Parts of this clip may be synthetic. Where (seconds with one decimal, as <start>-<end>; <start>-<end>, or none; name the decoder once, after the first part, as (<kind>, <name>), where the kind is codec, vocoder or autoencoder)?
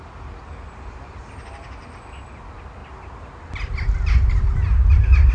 none